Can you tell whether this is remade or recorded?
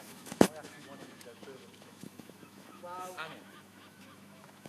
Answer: remade